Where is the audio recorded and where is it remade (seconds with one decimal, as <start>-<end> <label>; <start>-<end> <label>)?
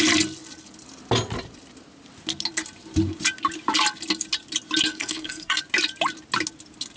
0.0-4.9 recorded; 4.9-5.6 remade; 5.6-7.0 recorded